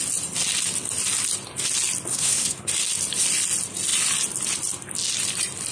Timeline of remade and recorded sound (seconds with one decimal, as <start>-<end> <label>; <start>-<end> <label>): 0.0-2.1 recorded; 2.1-2.7 remade; 2.7-5.7 recorded